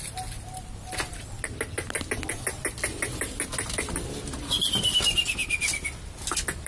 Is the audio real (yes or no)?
yes